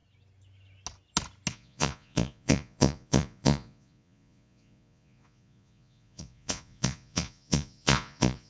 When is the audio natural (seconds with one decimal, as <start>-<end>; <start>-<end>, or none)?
0.0-1.5